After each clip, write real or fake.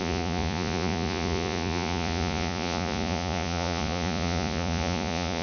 fake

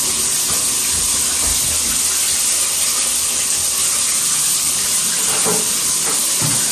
real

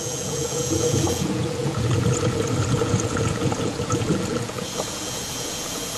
fake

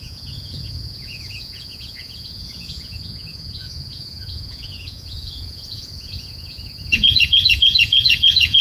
fake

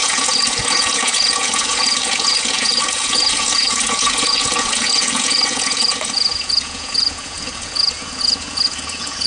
fake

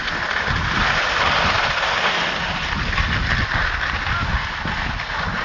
real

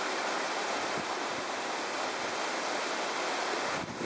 real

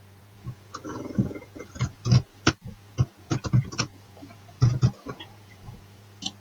fake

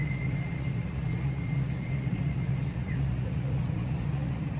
fake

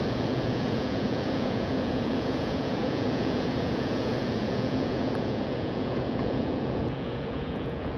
fake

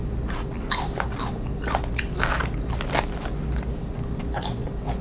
real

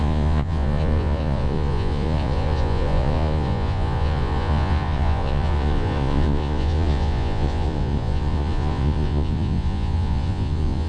fake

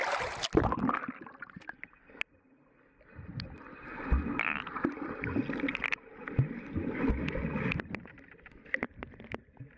real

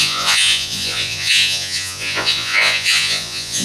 fake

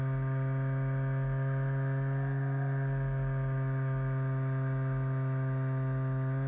real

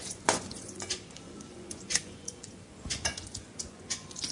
fake